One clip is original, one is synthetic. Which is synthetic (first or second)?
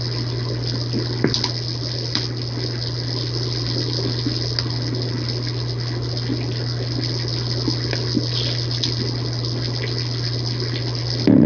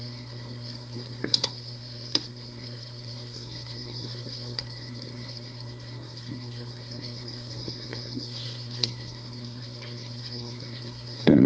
second